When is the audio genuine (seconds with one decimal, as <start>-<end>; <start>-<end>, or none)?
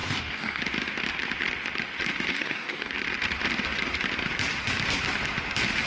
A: 0.6-2.3; 2.9-5.9